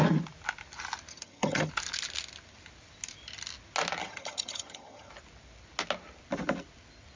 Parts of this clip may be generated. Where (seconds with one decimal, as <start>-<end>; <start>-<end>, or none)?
1.1-1.7; 4.0-5.1